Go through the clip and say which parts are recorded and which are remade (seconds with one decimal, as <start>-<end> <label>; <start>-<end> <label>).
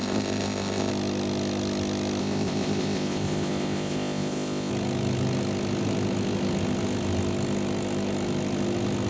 0.0-0.9 remade; 0.9-2.2 recorded; 2.2-4.7 remade; 4.7-9.1 recorded